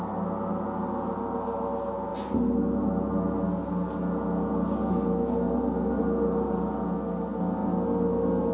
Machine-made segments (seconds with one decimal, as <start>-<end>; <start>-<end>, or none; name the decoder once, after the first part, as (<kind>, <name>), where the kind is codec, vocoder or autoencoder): none